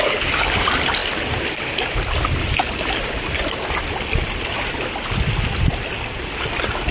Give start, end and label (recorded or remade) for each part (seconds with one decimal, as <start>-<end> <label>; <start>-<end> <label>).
0.0-6.9 recorded